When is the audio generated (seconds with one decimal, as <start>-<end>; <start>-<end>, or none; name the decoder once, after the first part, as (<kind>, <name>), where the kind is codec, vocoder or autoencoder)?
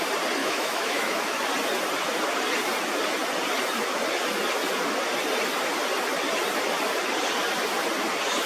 0.4-1.4 (autoencoder, DAC-VAE)